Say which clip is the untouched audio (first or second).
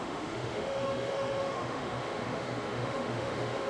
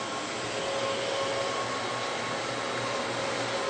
second